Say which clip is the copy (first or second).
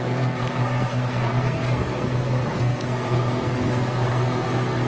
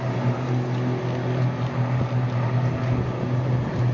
first